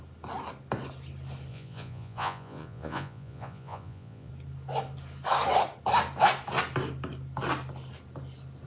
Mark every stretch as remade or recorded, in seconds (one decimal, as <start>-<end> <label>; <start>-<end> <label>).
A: 0.0-1.5 recorded; 1.5-4.3 remade; 4.3-8.7 recorded